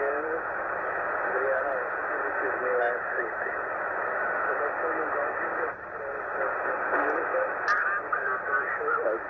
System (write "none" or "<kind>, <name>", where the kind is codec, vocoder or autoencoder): none